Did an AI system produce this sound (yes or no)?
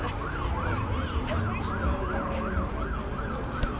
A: no